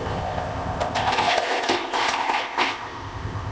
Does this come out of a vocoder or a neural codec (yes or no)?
yes